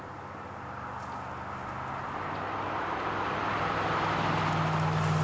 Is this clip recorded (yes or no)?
yes